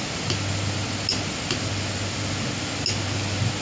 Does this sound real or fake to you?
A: real